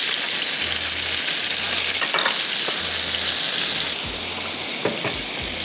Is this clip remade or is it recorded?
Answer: recorded